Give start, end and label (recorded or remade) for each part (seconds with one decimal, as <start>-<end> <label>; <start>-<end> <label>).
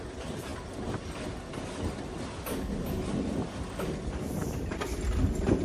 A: 0.0-5.6 recorded